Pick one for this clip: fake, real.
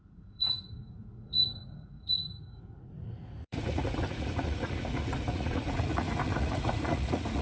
fake